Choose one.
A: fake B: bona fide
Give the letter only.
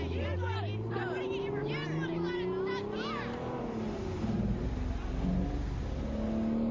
B